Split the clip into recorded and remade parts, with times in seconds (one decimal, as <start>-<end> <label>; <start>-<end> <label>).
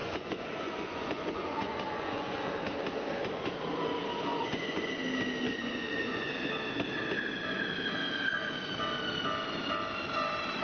0.0-2.5 remade; 2.5-4.3 recorded; 4.3-4.9 remade; 4.9-5.5 recorded; 5.5-6.3 remade; 6.3-10.6 recorded